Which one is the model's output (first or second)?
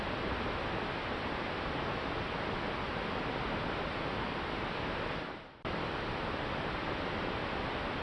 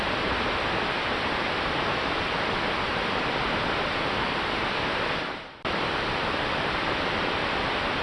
second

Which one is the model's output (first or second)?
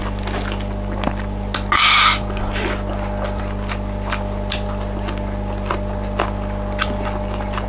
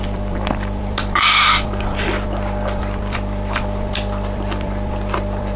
second